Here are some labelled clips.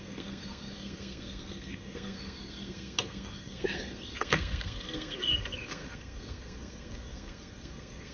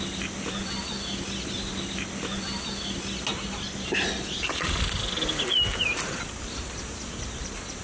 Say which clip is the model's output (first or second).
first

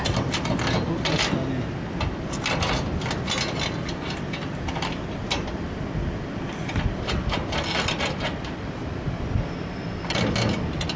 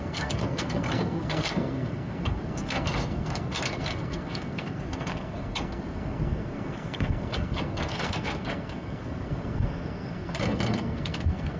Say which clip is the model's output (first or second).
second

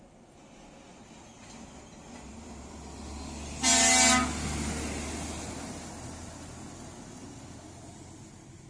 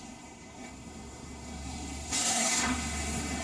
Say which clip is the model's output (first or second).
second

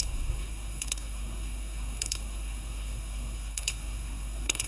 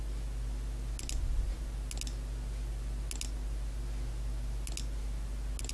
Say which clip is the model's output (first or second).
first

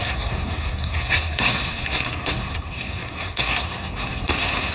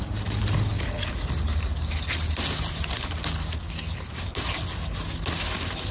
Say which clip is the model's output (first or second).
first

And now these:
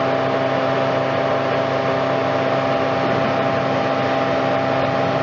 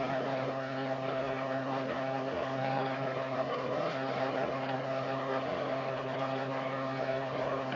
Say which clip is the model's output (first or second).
second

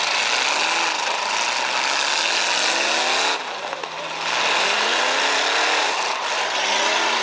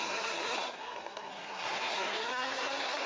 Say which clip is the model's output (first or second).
second